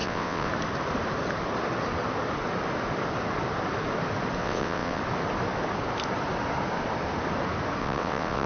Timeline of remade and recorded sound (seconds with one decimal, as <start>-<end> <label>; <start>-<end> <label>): 0.0-0.5 remade; 0.5-4.4 recorded; 4.4-5.0 remade; 5.0-7.8 recorded; 7.8-8.5 remade